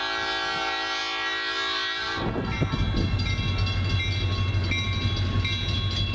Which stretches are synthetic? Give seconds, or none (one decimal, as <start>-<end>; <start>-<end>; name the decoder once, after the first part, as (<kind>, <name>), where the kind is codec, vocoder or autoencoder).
none